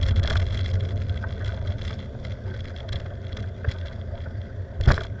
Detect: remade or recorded recorded